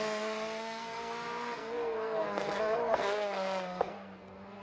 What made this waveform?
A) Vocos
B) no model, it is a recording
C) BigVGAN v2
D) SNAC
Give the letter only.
D